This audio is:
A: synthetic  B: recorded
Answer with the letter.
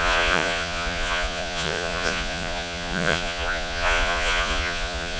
A